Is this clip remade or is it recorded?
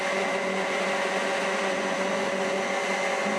remade